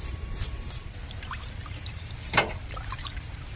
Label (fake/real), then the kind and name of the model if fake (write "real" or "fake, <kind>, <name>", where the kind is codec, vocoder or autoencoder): fake, vocoder, BigVGAN v2